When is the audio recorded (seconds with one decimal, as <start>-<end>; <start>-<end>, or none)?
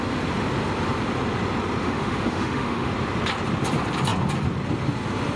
0.0-1.8; 2.9-5.4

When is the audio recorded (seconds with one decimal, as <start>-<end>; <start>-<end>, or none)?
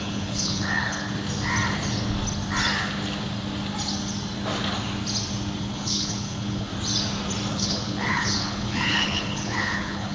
1.1-5.6; 6.7-7.5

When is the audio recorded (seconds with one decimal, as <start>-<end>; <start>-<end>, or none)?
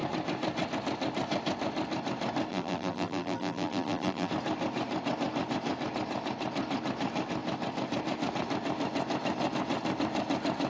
0.0-2.5; 4.3-10.7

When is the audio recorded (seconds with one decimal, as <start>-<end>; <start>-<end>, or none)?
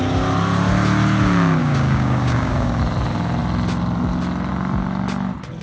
0.0-1.6; 2.8-5.6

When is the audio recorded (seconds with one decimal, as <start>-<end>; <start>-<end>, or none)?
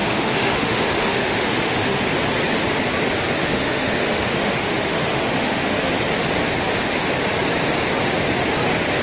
2.0-3.4; 5.9-9.0